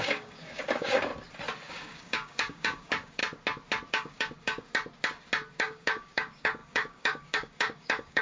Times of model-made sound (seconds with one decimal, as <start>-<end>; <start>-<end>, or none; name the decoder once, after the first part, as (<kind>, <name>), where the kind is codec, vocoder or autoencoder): 0.0-1.1 (codec, DAC); 1.7-3.2; 3.9-4.7; 5.5-8.2